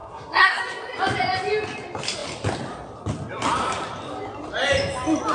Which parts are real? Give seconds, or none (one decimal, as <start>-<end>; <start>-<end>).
0.6-5.3